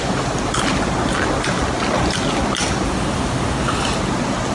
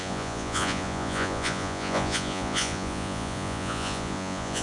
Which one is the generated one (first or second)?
second